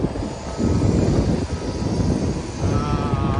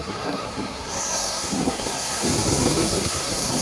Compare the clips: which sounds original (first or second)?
first